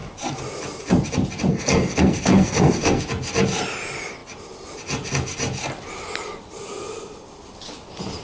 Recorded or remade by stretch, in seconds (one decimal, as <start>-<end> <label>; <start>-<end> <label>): 0.0-1.5 recorded; 1.5-3.0 remade; 3.0-8.2 recorded